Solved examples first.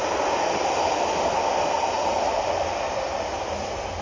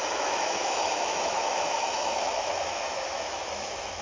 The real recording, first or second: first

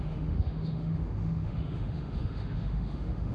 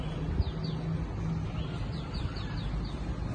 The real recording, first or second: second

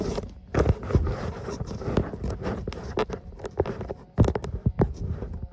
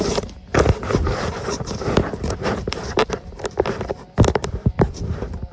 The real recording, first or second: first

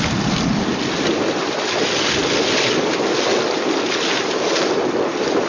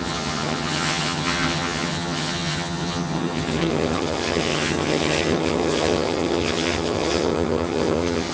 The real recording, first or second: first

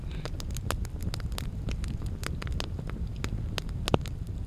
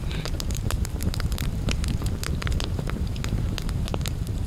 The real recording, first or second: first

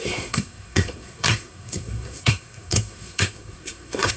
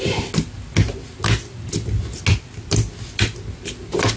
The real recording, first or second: second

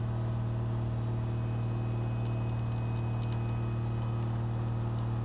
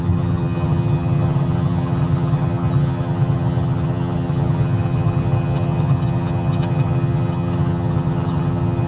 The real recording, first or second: first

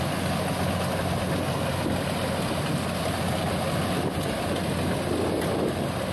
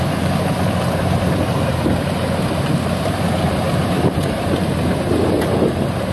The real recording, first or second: first